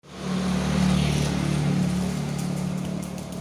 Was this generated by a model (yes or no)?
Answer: no